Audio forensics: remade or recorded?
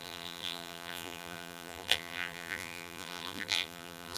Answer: remade